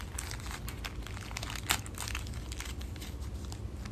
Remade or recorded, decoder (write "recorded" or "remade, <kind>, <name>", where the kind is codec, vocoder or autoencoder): recorded